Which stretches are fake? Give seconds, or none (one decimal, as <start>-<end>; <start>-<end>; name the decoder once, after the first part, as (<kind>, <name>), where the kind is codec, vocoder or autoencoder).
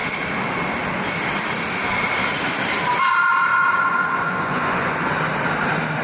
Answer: 3.5-5.2 (vocoder, Vocos)